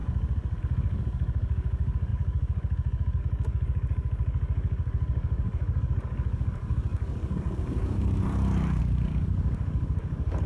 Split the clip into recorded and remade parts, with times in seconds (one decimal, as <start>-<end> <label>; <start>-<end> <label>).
0.0-0.6 recorded; 0.6-10.5 remade